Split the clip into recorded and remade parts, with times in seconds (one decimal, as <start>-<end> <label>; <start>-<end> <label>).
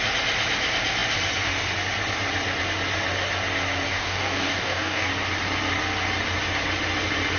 0.0-3.9 recorded; 3.9-5.1 remade; 5.1-7.4 recorded